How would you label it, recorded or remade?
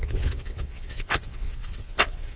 remade